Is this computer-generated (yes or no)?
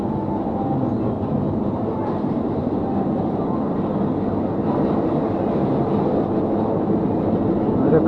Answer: no